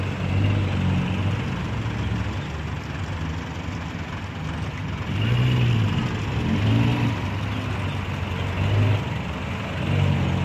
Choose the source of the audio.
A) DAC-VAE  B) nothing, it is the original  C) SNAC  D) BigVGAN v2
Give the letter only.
B